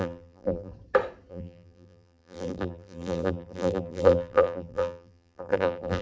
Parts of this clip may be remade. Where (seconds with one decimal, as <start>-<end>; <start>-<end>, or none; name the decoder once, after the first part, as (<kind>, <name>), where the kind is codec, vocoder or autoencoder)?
0.0-0.7 (vocoder, BigVGAN v2); 1.3-6.0